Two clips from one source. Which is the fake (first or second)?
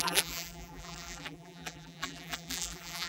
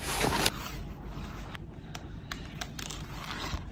first